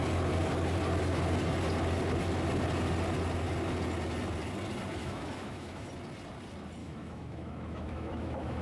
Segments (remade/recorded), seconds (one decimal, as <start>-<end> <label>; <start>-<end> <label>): 0.0-5.0 recorded; 5.0-5.9 remade; 5.9-6.8 recorded; 6.8-8.6 remade